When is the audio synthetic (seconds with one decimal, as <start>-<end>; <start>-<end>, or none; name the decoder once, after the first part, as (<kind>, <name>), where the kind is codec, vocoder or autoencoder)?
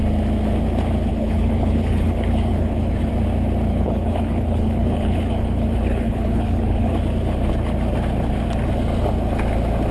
1.1-3.1 (codec, HILCodec); 3.7-7.0